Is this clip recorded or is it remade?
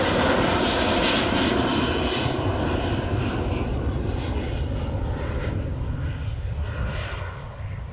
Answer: recorded